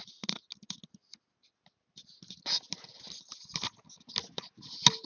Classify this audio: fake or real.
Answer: real